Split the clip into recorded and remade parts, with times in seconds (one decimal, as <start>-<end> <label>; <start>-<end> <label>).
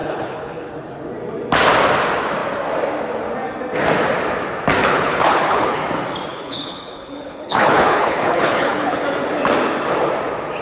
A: 0.0-0.7 remade; 0.7-4.9 recorded; 4.9-5.8 remade; 5.8-6.3 recorded; 6.3-9.0 remade; 9.0-10.6 recorded